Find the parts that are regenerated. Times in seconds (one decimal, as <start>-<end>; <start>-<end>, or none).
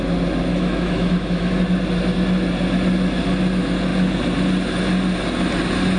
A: 0.5-1.6